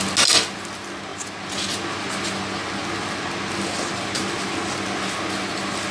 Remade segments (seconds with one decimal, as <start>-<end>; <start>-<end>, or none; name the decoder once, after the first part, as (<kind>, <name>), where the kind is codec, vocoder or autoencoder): none